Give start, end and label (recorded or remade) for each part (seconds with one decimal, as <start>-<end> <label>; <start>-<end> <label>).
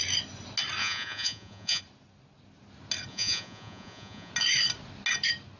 0.0-0.8 recorded; 0.8-1.8 remade; 1.8-3.1 recorded; 3.1-4.3 remade; 4.3-5.6 recorded